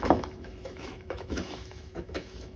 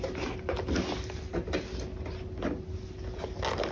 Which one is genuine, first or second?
second